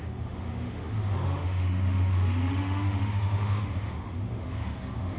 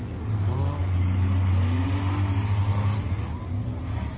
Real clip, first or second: second